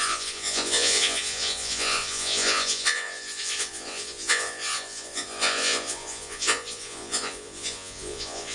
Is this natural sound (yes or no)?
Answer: no